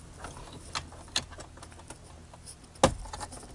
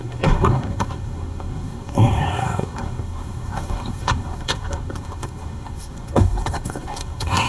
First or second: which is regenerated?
second